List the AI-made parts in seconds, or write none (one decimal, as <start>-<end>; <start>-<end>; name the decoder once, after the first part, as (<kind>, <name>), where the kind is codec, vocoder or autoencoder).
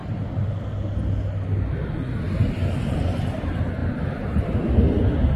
none